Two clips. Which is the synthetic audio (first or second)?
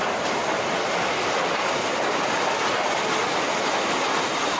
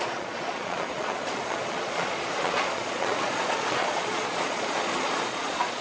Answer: second